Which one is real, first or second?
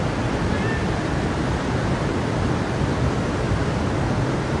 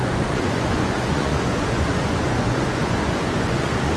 first